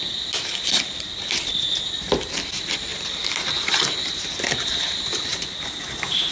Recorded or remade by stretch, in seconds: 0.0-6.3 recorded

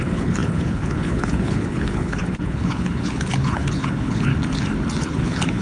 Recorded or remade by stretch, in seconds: 0.0-4.3 remade; 4.3-5.0 recorded; 5.0-5.6 remade

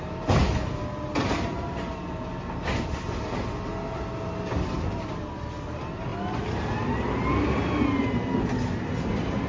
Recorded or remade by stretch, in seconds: 0.0-9.5 recorded

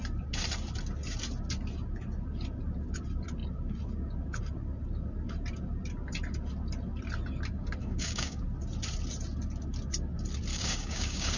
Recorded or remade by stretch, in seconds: 0.0-7.8 recorded; 7.8-8.4 remade; 8.4-10.5 recorded; 10.5-11.4 remade

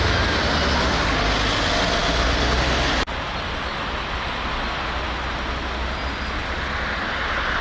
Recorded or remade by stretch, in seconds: 0.0-7.6 recorded